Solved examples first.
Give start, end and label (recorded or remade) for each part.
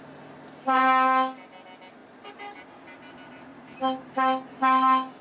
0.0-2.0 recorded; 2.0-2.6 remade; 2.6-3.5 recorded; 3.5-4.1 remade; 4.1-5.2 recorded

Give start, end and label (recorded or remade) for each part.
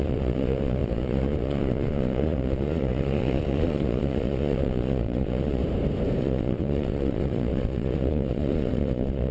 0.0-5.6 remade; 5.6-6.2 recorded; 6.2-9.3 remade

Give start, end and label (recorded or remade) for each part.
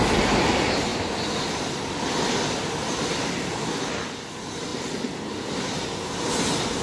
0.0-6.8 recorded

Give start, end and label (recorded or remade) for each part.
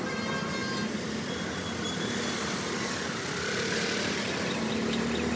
0.0-5.4 recorded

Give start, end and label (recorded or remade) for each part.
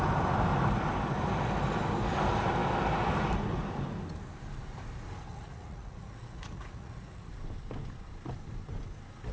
0.0-5.3 recorded; 5.3-7.3 remade; 7.3-9.3 recorded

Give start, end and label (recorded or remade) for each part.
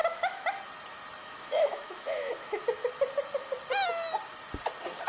0.0-0.5 remade; 0.5-1.2 recorded; 1.2-2.6 remade; 2.6-5.1 recorded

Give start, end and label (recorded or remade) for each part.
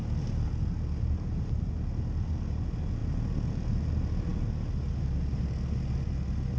0.0-0.7 remade; 0.7-3.0 recorded; 3.0-3.9 remade; 3.9-6.6 recorded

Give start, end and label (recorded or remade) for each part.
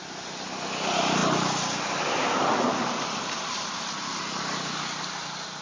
0.0-5.6 recorded